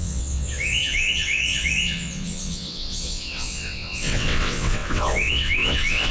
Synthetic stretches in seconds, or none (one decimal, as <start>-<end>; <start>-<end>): 0.0-6.1